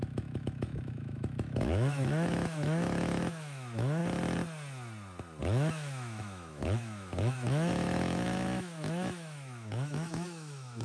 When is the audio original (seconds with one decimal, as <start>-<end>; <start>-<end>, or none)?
4.0-5.4